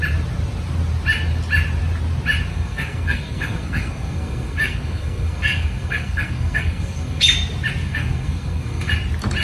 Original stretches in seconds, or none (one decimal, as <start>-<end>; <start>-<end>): 0.0-2.5; 7.2-7.8; 8.9-9.4

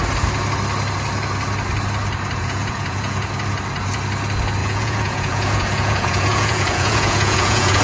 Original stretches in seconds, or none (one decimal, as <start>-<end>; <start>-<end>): 0.0-2.4; 3.3-4.6

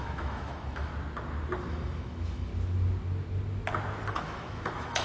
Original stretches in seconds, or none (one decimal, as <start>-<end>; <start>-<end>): 0.9-1.7; 2.5-4.1

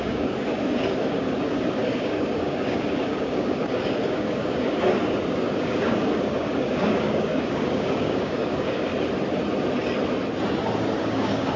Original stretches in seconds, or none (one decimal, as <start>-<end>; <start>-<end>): 8.9-11.0

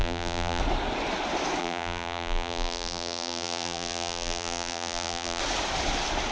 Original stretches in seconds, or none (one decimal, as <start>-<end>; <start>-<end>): 0.6-1.6; 5.4-6.3

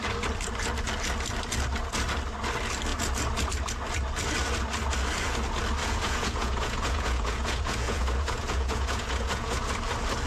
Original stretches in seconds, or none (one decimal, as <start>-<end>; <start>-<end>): 0.0-5.8; 9.6-10.3

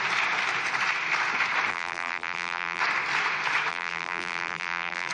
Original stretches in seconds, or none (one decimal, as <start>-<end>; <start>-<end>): 0.0-1.7; 2.8-3.7